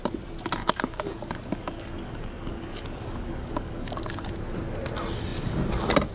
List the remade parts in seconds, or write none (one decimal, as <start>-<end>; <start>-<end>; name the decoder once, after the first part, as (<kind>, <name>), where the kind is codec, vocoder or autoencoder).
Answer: 0.6-4.3 (codec, DAC)

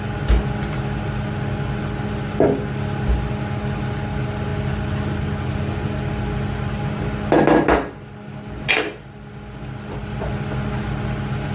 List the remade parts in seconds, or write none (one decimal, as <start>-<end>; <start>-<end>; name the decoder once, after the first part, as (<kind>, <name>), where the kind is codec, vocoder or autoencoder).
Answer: none

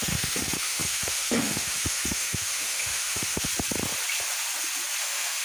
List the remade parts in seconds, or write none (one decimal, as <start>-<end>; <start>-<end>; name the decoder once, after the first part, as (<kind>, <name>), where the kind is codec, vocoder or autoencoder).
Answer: 0.0-3.5 (autoencoder, DAC-VAE); 5.0-5.4